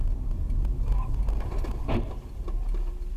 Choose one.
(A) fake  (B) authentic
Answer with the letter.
B